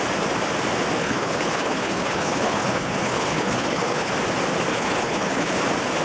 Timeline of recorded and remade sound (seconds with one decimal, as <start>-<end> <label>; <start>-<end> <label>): 0.0-1.0 recorded; 1.0-4.1 remade; 4.1-4.7 recorded; 4.7-5.6 remade; 5.6-6.0 recorded